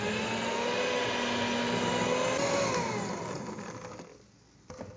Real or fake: real